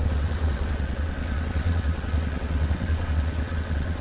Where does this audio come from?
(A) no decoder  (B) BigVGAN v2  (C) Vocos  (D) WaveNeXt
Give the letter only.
D